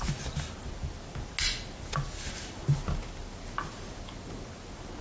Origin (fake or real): real